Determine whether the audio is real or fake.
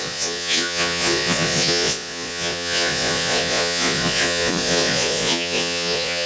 fake